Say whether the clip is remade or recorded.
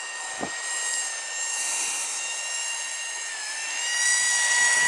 recorded